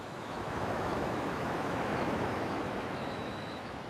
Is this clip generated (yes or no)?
yes